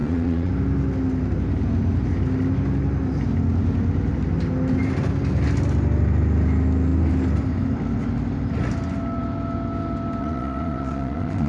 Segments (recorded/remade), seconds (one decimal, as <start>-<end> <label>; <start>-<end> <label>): 0.0-0.5 remade; 0.5-10.2 recorded; 10.2-11.5 remade